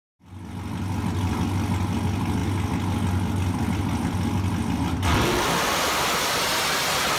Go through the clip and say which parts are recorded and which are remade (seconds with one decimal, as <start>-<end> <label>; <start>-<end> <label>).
0.0-7.2 recorded